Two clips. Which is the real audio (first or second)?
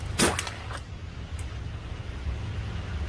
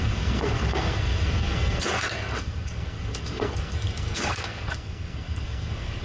first